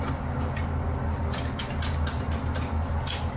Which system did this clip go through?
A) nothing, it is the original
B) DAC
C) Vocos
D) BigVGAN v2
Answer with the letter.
A